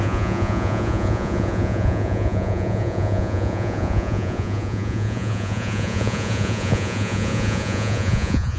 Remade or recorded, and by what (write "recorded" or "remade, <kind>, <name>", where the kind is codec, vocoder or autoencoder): remade, vocoder, Vocos